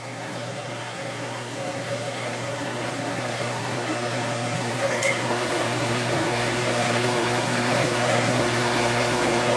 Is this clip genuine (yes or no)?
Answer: no